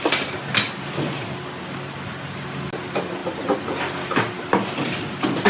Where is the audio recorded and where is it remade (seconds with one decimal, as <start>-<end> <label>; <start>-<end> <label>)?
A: 0.0-5.5 recorded